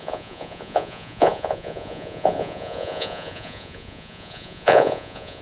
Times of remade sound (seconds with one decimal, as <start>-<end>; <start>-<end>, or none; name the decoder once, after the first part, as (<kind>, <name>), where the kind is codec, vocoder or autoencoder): 0.0-5.4 (vocoder, Vocos)